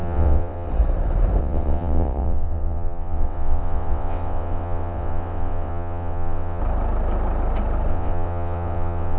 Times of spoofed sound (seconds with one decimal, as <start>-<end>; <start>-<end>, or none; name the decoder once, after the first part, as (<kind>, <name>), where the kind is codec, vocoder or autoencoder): 0.0-0.7 (vocoder, WaveNeXt); 1.4-6.6; 7.9-9.2